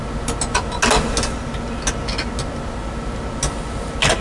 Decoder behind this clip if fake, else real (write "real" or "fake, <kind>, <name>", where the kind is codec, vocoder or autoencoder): real